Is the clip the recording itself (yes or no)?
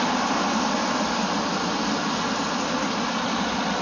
yes